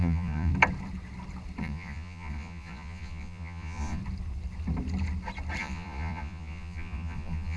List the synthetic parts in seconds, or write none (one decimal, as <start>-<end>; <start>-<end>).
0.0-0.5; 1.6-4.0; 5.6-7.6